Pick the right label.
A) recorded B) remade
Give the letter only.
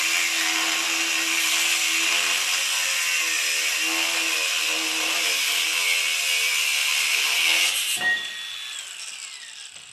A